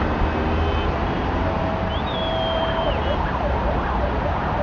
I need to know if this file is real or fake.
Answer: real